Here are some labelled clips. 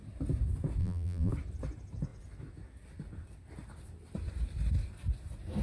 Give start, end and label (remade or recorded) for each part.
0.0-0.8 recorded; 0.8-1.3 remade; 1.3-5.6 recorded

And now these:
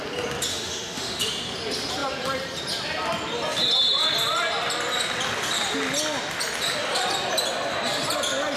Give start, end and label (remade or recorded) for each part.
0.0-0.5 recorded; 0.5-1.2 remade; 1.2-8.6 recorded

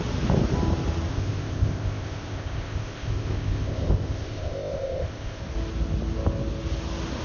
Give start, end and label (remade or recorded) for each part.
0.0-1.1 recorded; 1.1-5.4 remade; 5.4-7.2 recorded

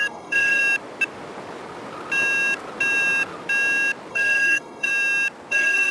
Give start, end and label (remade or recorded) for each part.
0.0-0.6 remade; 0.6-4.1 recorded; 4.1-4.9 remade; 4.9-5.5 recorded; 5.5-5.9 remade

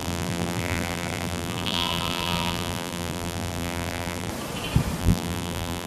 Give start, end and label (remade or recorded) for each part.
0.0-4.3 remade; 4.3-5.0 recorded; 5.0-5.9 remade

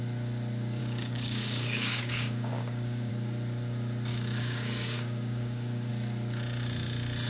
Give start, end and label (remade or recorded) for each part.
0.0-0.8 recorded; 0.8-3.1 remade; 3.1-4.1 recorded; 4.1-5.9 remade; 5.9-7.3 recorded

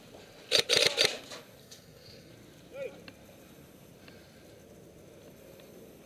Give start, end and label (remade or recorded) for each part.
0.0-1.6 recorded; 1.6-2.3 remade; 2.3-6.1 recorded